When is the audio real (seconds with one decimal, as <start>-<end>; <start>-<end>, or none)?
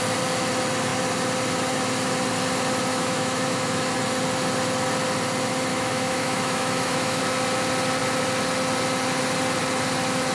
0.0-2.9; 4.0-5.7; 7.2-10.3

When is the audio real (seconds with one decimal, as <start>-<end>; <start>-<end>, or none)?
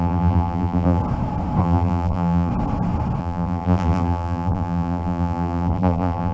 1.0-1.6; 2.5-3.2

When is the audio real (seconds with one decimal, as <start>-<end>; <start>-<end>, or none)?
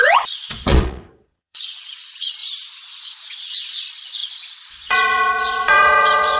2.4-3.4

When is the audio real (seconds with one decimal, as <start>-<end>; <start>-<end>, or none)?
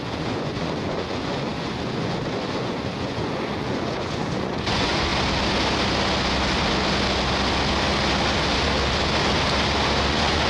5.1-10.1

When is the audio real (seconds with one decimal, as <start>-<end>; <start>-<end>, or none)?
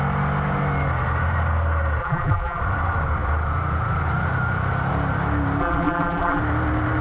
0.0-2.0; 2.6-5.6; 6.4-7.0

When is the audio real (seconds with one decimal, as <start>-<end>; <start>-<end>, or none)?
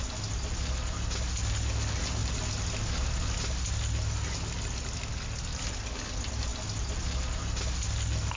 0.0-8.4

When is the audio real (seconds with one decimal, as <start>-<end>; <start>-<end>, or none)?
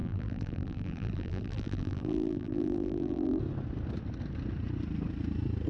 3.4-5.7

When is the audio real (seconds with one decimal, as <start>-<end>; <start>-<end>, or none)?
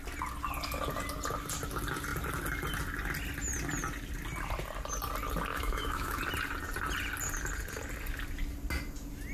0.0-5.5; 6.2-9.3